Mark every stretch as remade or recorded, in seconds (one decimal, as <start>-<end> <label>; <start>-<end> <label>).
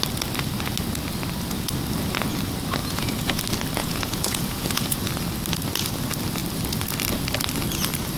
0.0-2.8 recorded; 2.8-3.4 remade; 3.4-3.8 recorded; 3.8-5.1 remade; 5.1-8.2 recorded